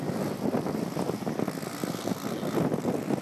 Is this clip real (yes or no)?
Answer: no